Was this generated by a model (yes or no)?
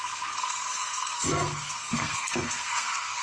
yes